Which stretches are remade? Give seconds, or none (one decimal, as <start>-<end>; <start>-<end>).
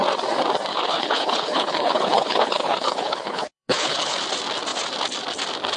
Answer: 0.7-4.2